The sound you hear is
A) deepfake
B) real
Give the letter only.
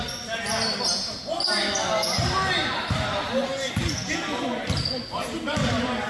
B